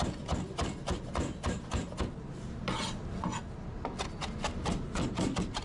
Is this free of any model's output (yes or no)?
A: yes